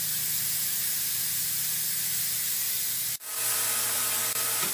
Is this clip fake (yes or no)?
no